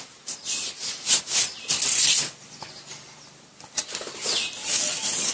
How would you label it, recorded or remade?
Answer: recorded